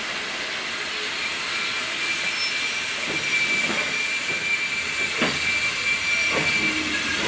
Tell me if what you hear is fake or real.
real